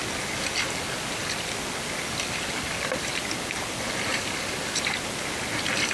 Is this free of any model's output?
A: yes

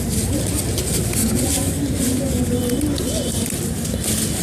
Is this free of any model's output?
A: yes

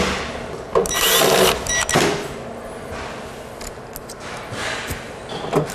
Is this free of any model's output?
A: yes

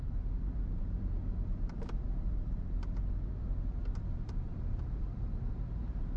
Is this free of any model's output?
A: no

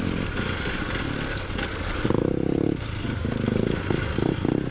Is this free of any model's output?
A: yes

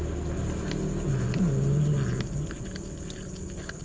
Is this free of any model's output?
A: yes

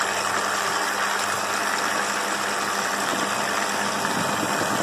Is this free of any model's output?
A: yes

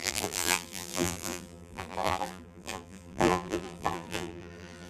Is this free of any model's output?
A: no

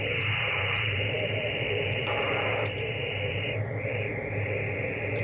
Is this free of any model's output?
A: no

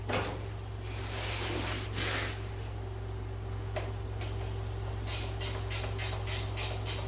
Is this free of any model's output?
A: yes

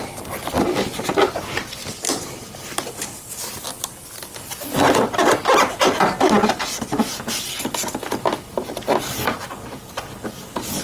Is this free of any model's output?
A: yes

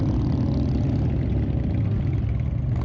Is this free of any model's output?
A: yes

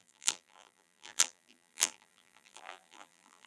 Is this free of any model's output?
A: no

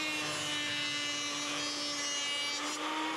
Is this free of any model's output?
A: yes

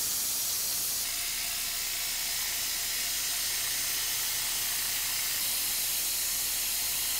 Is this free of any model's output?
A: yes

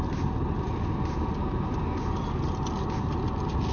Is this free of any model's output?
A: yes